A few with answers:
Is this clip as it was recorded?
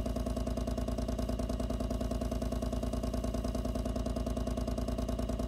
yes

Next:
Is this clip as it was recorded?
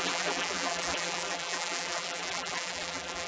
no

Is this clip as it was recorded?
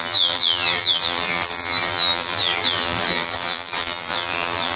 no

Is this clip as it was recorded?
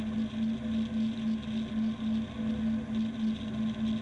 yes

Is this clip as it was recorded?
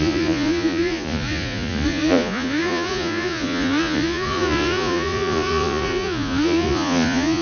no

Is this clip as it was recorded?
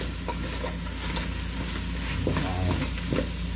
yes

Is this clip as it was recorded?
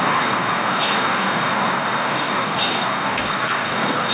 no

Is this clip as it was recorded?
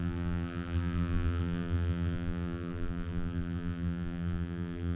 no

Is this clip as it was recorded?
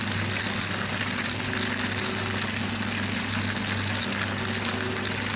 yes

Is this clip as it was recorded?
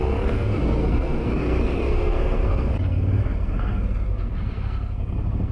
no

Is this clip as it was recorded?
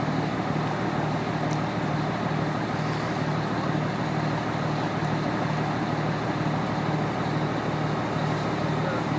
yes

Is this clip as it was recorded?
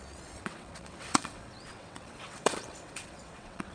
no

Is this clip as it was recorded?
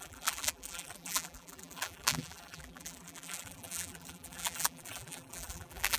no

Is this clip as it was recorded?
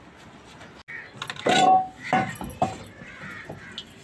yes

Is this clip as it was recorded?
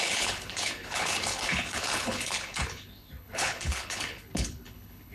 no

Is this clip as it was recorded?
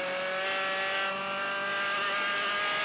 yes